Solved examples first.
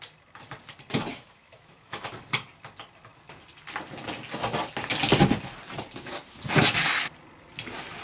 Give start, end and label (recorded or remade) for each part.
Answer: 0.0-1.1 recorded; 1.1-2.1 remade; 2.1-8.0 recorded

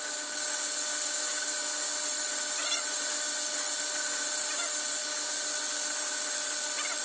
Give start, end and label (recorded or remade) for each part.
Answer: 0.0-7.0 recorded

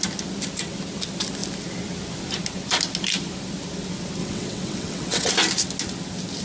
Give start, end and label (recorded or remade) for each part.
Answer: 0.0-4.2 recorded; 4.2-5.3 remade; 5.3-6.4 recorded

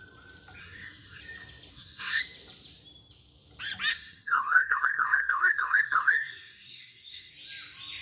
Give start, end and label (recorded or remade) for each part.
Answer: 0.0-0.6 recorded; 0.6-1.2 remade; 1.2-1.7 recorded; 1.7-2.2 remade; 2.2-3.9 recorded; 3.9-7.3 remade; 7.3-8.0 recorded

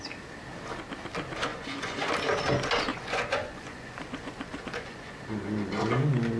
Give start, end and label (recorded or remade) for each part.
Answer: 0.0-1.5 recorded; 1.5-2.1 remade; 2.1-2.9 recorded; 2.9-5.2 remade; 5.2-6.4 recorded